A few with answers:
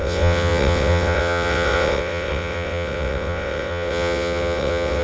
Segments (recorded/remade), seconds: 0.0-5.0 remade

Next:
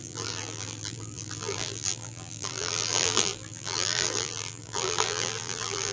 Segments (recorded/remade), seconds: 0.0-5.9 remade

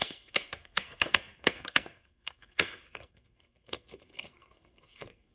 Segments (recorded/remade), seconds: 0.0-5.3 remade

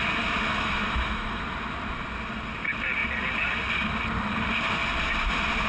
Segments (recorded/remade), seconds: 0.0-0.5 recorded; 0.5-1.4 remade; 1.4-5.7 recorded

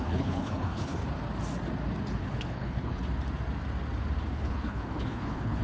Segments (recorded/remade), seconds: 0.0-1.0 remade; 1.0-2.2 recorded; 2.2-3.0 remade; 3.0-4.3 recorded; 4.3-5.6 remade

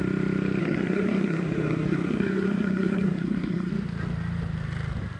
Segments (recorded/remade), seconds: 0.0-0.6 recorded; 0.6-3.7 remade; 3.7-5.2 recorded

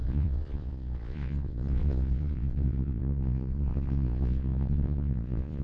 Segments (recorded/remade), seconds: 0.0-5.6 remade

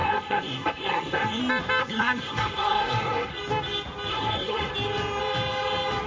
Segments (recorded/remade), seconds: 0.0-1.4 remade; 1.4-1.8 recorded; 1.8-3.3 remade; 3.3-4.1 recorded; 4.1-4.7 remade; 4.7-6.1 recorded